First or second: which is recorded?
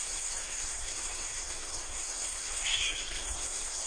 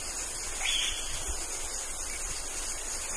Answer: second